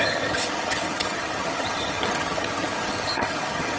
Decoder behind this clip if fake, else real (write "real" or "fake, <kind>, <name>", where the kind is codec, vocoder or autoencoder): fake, vocoder, HiFi-GAN